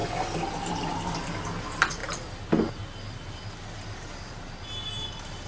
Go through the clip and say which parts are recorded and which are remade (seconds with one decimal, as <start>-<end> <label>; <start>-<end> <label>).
0.0-5.5 recorded